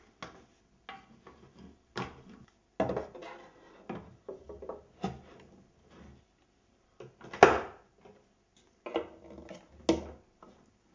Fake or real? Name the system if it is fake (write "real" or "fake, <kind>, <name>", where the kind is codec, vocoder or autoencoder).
real